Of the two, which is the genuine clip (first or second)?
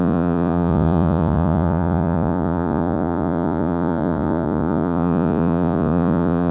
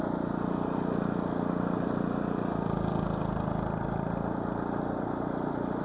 second